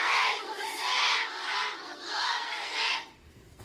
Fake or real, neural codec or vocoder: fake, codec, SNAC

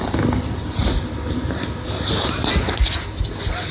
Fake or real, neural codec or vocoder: real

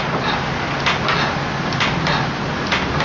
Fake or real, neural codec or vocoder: real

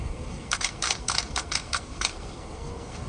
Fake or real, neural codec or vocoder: fake, codec, SNAC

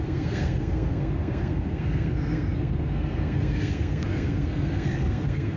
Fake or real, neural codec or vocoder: fake, codec, SNAC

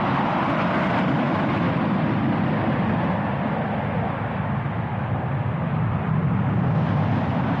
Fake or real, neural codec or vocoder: real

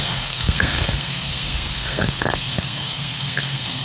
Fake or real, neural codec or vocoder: fake, codec, SNAC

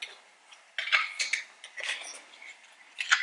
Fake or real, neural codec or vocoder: real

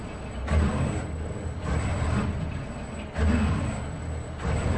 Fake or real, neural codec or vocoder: real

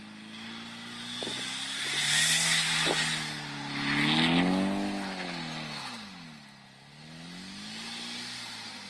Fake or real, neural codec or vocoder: real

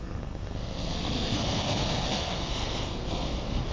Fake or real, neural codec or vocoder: fake, codec, SNAC